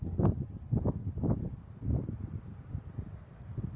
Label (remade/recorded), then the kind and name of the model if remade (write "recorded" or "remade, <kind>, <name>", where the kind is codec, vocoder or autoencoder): recorded